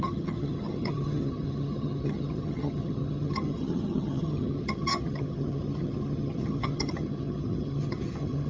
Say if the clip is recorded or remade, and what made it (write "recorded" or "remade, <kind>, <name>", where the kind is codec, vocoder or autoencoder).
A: remade, vocoder, HiFi-GAN